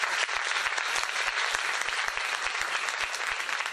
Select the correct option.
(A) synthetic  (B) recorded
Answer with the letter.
B